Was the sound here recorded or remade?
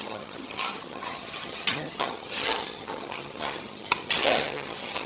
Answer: remade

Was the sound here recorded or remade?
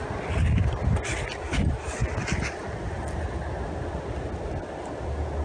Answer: recorded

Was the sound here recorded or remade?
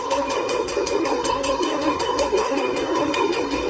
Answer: remade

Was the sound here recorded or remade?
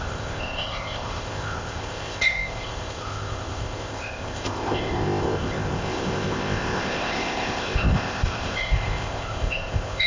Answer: remade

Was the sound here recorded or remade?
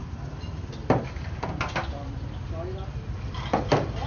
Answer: recorded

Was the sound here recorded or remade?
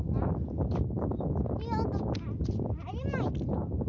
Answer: recorded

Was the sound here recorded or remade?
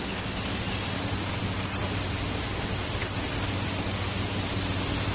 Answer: recorded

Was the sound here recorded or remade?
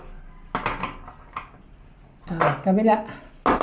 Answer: recorded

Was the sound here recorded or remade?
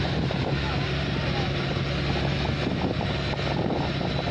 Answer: recorded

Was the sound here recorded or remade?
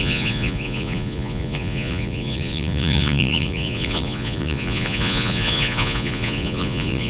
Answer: remade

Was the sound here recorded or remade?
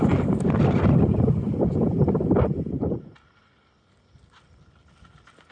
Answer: recorded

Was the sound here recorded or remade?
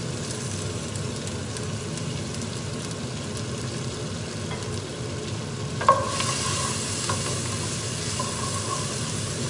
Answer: recorded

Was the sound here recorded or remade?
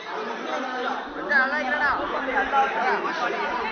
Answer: recorded